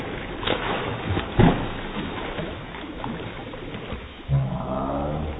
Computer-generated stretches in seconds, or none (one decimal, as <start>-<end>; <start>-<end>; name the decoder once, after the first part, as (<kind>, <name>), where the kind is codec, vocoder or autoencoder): 0.0-3.4 (autoencoder, DAC-VAE); 4.0-5.4